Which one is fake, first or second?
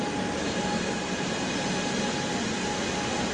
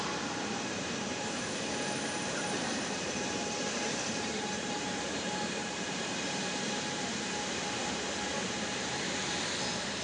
second